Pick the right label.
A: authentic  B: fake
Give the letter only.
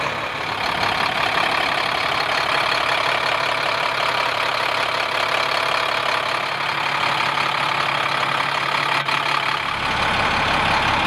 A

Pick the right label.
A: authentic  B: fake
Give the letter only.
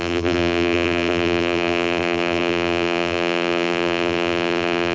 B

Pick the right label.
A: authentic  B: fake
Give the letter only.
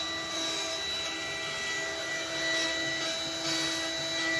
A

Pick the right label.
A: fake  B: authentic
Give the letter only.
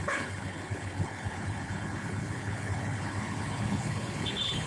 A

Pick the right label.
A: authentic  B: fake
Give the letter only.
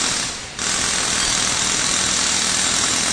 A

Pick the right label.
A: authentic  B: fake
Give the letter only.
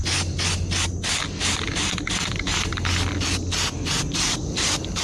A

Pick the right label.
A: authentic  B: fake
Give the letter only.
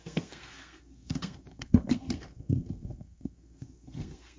B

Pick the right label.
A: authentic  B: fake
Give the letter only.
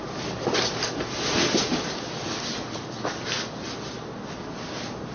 A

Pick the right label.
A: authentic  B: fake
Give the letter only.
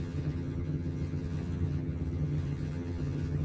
B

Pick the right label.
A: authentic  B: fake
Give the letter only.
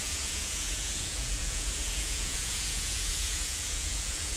B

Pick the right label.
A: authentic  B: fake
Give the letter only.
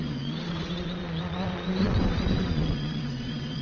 B